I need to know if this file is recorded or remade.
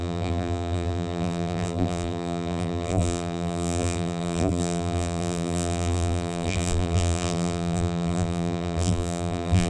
remade